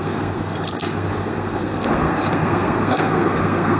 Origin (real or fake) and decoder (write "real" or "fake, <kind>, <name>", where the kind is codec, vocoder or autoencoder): fake, codec, SNAC